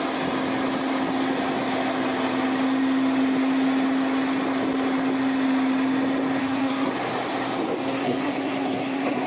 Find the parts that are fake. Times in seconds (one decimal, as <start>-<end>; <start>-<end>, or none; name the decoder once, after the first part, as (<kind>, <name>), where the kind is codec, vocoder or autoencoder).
6.4-6.9 (codec, SNAC); 8.0-9.3